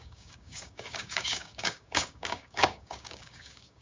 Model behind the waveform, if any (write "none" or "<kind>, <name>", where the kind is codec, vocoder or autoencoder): codec, DAC